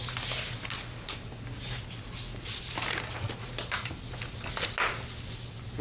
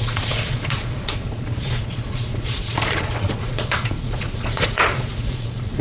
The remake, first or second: second